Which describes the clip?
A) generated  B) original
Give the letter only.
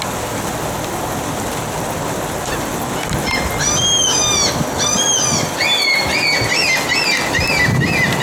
B